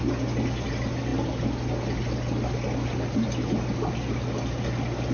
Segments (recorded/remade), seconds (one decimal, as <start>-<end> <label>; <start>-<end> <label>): 0.0-5.1 recorded